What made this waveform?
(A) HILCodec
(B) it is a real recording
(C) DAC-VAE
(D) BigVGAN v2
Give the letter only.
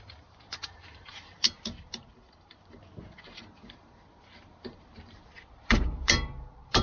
D